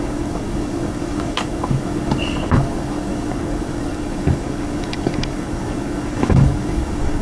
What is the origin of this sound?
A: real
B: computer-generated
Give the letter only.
B